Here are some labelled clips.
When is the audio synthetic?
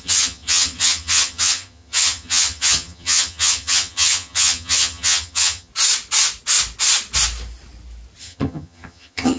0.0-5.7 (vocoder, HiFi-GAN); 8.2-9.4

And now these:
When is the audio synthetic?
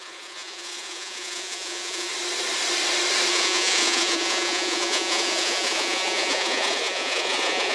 0.0-2.1 (vocoder, Vocos); 3.3-7.7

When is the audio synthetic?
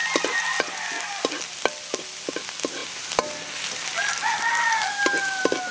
none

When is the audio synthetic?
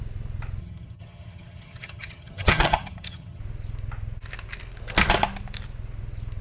0.6-3.4 (vocoder, HiFi-GAN)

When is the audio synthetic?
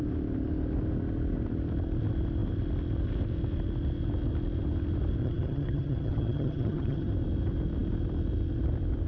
5.2-7.1 (vocoder, HiFi-GAN)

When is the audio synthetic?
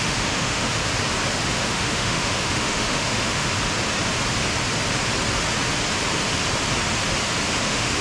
0.0-0.8 (autoencoder, DAC-VAE); 1.5-3.5; 7.6-8.0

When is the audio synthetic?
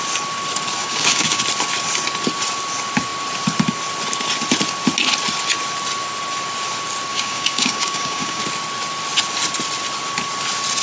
0.8-1.4 (codec, DAC); 7.1-8.4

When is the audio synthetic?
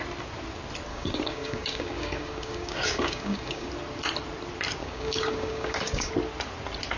0.9-3.7 (codec, DAC); 4.8-6.1